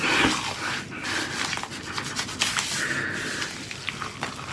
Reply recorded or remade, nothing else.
recorded